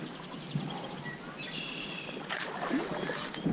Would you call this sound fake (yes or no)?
no